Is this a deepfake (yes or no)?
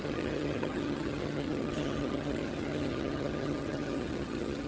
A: yes